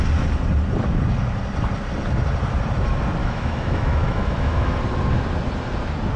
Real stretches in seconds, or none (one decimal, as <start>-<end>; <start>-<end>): 0.0-3.2; 4.8-6.2